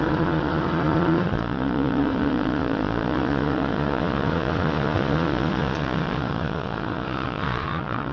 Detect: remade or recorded remade